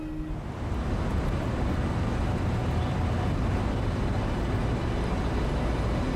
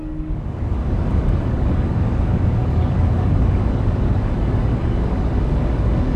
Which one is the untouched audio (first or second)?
first